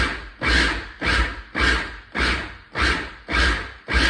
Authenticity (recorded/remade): recorded